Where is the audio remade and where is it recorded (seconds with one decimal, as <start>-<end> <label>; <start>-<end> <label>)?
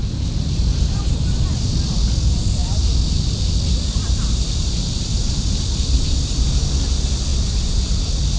0.0-1.0 remade; 1.0-2.6 recorded; 2.6-6.5 remade; 6.5-7.3 recorded; 7.3-8.4 remade